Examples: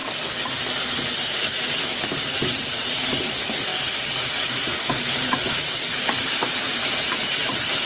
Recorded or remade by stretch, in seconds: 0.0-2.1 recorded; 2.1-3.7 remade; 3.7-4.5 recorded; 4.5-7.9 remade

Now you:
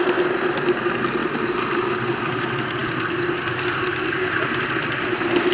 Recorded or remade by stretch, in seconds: 0.0-5.5 recorded

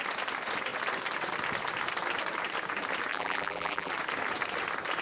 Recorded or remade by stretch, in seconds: 0.0-3.1 recorded; 3.1-3.9 remade; 3.9-5.0 recorded

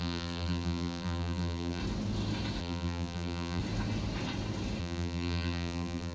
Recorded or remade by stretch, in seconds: 0.0-1.8 remade; 1.8-2.6 recorded; 2.6-3.6 remade; 3.6-4.8 recorded; 4.8-6.1 remade

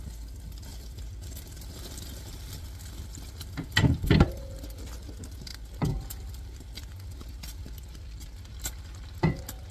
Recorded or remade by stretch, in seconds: 0.0-0.7 recorded; 0.7-4.3 remade; 4.3-5.5 recorded; 5.5-9.2 remade; 9.2-9.7 recorded

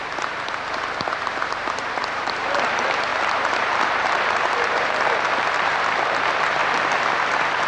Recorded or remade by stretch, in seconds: 0.0-6.6 remade; 6.6-7.1 recorded; 7.1-7.7 remade